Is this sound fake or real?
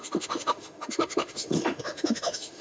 fake